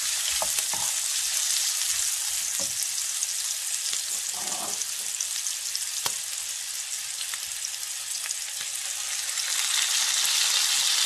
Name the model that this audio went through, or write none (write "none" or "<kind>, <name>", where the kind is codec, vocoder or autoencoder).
none